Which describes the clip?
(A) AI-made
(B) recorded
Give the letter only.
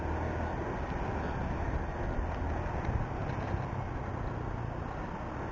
B